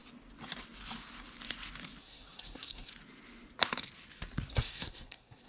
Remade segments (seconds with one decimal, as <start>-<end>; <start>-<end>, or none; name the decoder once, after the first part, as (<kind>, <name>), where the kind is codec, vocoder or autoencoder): 2.0-2.9 (codec, SNAC); 4.5-5.5